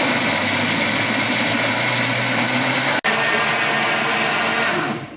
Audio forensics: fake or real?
real